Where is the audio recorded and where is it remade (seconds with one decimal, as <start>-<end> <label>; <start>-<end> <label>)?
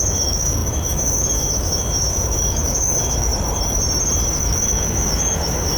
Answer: 0.0-3.3 remade; 3.3-4.4 recorded; 4.4-5.8 remade